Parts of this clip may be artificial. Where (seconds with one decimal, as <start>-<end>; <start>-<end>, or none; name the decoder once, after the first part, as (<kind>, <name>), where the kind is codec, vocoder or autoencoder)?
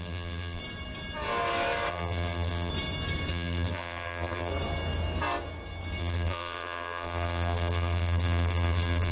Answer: 0.0-0.6 (vocoder, BigVGAN v2); 1.9-2.7; 3.3-4.5; 6.0-9.1